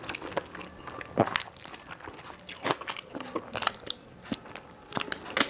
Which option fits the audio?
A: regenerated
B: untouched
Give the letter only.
B